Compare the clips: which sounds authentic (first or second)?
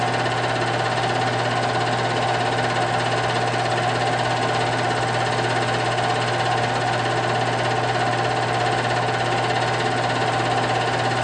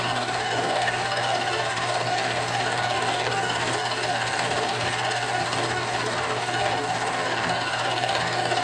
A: first